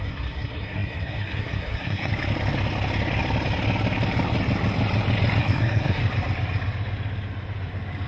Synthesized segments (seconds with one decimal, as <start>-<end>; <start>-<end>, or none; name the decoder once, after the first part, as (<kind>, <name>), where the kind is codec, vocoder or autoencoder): 0.0-2.1 (codec, SNAC); 5.4-6.0